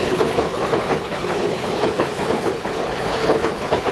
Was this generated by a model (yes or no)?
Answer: yes